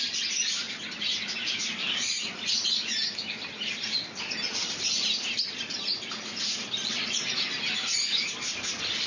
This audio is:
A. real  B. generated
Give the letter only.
A